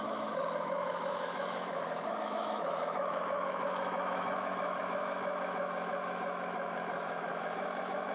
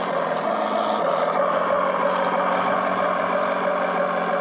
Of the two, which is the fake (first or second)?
first